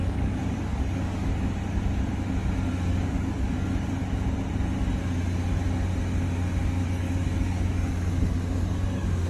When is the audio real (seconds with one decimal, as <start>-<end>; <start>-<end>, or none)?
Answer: 1.3-2.9; 4.0-6.6